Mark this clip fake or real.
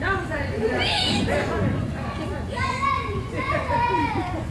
fake